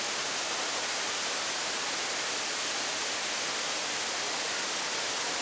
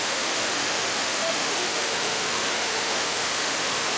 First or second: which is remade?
second